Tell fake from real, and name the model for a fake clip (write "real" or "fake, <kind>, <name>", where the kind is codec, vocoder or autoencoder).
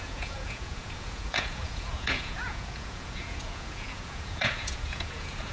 fake, vocoder, Vocos